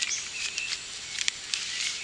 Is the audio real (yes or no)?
yes